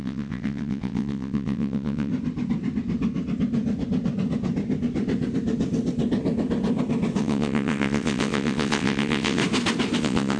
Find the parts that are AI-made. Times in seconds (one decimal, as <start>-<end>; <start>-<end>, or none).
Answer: 0.0-2.1; 7.2-9.4; 10.0-10.4